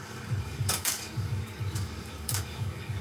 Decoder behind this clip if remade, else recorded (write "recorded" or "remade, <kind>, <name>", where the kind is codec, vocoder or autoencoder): remade, codec, DAC